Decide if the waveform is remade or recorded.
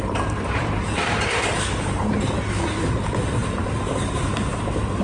remade